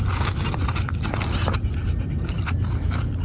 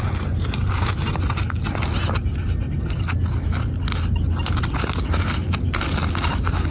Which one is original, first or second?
second